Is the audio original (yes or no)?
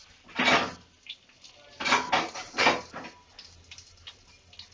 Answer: yes